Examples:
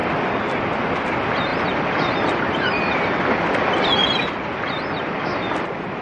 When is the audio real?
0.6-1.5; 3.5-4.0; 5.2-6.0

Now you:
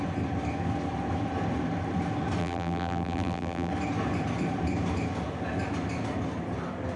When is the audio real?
0.0-2.4; 3.7-7.0

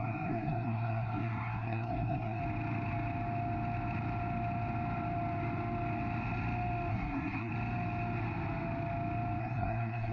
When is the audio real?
2.4-6.9; 7.5-9.4

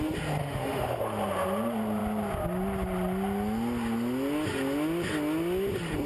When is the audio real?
0.0-0.4; 1.0-6.1